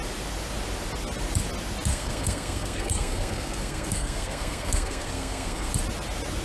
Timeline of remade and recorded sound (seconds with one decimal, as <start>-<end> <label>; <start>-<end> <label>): 0.0-1.9 recorded; 1.9-5.7 remade; 5.7-6.4 recorded